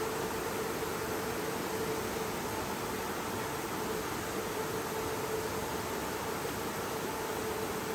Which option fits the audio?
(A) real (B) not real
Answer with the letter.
A